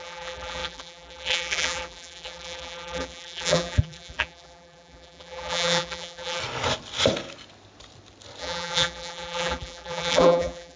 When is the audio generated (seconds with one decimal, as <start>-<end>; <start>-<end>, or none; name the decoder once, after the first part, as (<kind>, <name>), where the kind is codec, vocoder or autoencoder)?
0.0-6.4 (vocoder, BigVGAN v2); 8.4-10.8